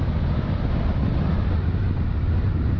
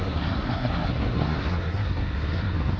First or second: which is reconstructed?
second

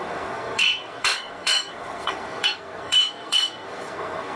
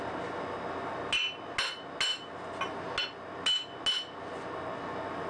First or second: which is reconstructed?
first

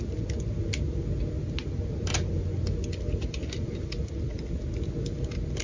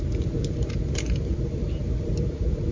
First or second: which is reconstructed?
second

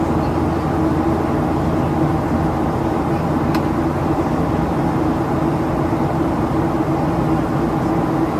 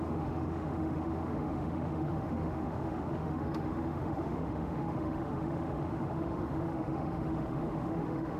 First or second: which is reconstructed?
second